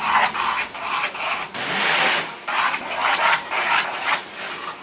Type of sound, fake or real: real